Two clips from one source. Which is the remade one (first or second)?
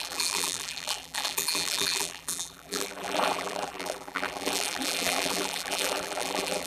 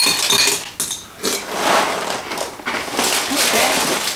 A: first